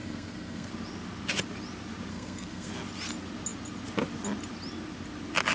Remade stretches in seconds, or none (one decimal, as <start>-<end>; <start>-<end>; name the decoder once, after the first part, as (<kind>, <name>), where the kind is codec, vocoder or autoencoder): 0.0-0.7 (codec, SNAC); 2.1-2.7